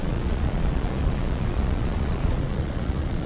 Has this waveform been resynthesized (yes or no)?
yes